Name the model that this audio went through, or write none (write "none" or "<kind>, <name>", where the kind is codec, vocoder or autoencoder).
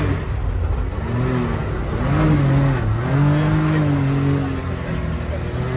none